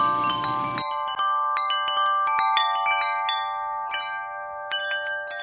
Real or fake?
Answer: real